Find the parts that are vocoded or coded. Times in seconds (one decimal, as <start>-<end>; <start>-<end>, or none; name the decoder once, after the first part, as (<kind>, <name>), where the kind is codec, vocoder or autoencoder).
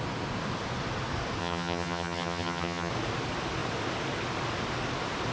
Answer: 1.4-2.9 (vocoder, HiFi-GAN)